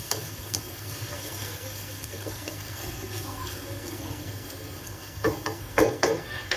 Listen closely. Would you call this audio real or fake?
fake